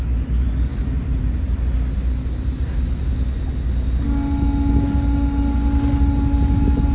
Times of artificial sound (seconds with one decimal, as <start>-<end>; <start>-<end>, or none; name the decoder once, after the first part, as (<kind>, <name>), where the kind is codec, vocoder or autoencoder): none